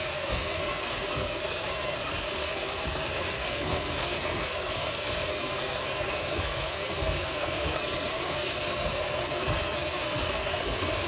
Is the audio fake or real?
fake